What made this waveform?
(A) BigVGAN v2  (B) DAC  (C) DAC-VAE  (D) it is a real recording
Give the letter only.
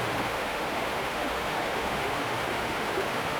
C